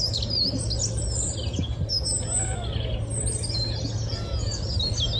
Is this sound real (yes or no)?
yes